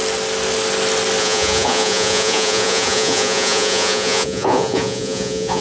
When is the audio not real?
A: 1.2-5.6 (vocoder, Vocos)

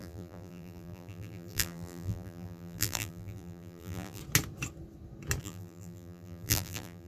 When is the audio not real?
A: 0.0-4.2 (vocoder, BigVGAN v2); 5.4-7.1

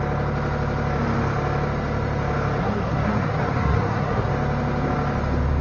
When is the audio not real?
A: 2.6-4.3 (codec, SNAC)

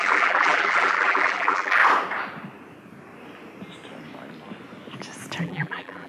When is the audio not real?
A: 0.0-1.8 (vocoder, BigVGAN v2); 5.4-6.1

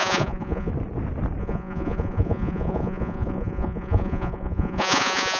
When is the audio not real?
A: 0.0-0.7 (vocoder, Vocos); 1.4-5.4